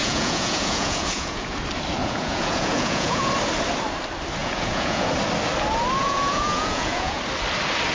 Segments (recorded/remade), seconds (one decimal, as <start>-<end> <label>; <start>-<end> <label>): 0.0-1.6 remade; 1.6-2.0 recorded; 2.0-3.3 remade; 3.3-4.4 recorded; 4.4-5.1 remade; 5.1-6.0 recorded; 6.0-7.2 remade; 7.2-7.9 recorded